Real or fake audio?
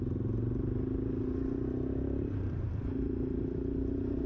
real